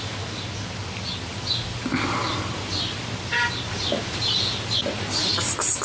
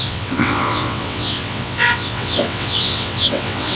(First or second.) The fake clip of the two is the second